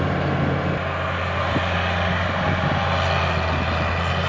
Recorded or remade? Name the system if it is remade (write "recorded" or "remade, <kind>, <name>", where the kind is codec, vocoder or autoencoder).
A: recorded